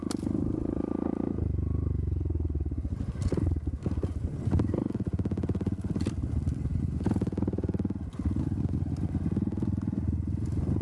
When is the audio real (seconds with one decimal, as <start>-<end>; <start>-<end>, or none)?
0.0-10.8